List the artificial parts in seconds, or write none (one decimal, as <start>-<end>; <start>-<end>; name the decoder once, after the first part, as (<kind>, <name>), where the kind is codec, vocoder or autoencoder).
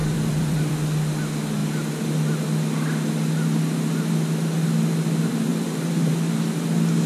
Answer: 0.0-0.7 (vocoder, BigVGAN v2); 5.5-6.1